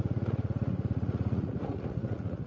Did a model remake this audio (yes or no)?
yes